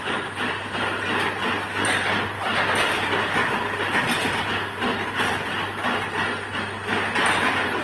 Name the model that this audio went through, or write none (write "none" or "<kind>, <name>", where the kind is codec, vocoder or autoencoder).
none